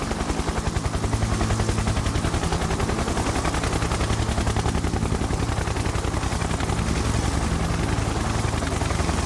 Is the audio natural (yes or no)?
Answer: yes